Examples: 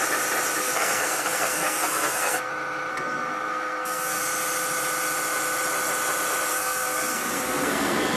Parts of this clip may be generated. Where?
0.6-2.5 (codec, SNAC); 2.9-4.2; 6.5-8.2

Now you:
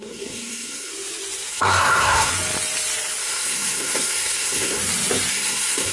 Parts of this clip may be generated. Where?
0.0-0.9 (codec, SNAC); 1.5-2.3; 3.2-4.8; 5.3-5.9

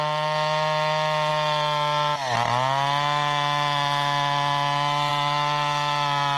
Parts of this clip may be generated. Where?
none

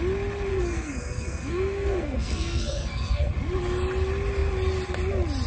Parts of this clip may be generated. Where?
0.5-3.3 (codec, SNAC)

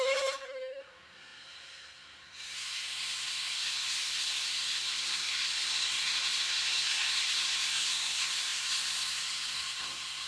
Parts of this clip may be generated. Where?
0.0-10.3 (codec, SNAC)